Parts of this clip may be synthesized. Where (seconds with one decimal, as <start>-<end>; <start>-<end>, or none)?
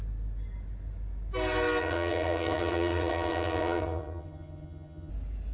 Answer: 1.8-5.1